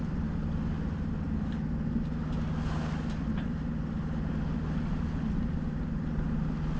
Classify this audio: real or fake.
real